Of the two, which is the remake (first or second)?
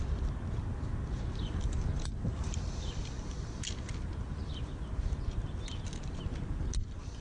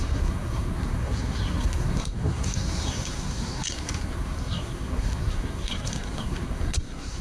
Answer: second